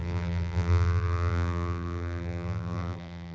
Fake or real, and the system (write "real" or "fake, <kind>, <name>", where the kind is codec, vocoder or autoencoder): fake, vocoder, BigVGAN v2